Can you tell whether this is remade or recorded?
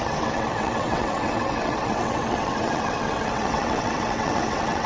remade